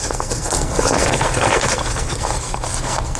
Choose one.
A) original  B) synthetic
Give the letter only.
B